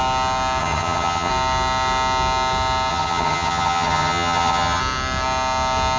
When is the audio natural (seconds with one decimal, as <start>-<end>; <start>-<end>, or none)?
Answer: 0.0-0.6; 1.3-2.9; 4.8-6.0